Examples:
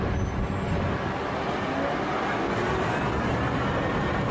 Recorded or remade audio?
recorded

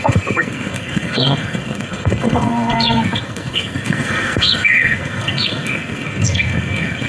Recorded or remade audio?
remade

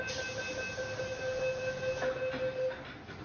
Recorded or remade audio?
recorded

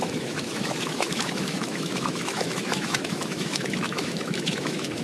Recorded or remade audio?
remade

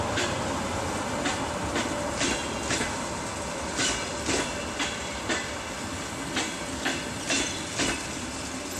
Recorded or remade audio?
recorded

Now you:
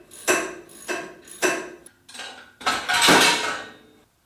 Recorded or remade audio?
remade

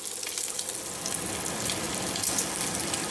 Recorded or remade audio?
recorded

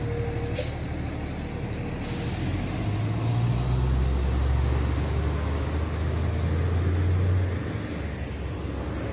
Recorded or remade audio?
recorded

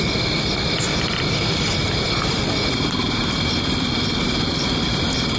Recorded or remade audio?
recorded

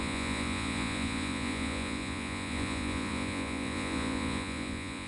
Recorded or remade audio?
remade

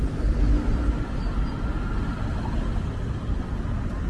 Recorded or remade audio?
recorded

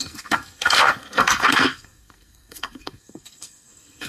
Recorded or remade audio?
remade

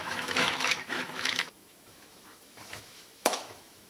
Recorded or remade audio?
remade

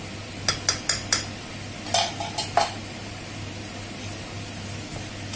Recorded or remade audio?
recorded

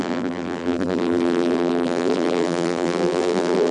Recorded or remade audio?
remade